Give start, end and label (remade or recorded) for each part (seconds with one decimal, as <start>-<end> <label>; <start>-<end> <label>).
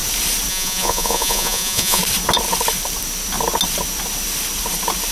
0.0-0.5 recorded; 0.5-2.0 remade; 2.0-5.1 recorded